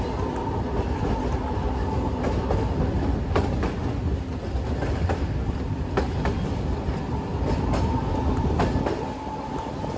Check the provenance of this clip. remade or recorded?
recorded